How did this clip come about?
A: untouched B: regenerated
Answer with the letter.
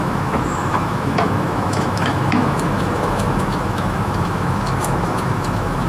B